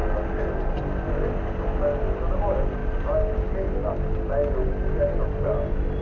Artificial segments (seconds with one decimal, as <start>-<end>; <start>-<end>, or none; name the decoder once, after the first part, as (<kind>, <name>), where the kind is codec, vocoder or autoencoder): none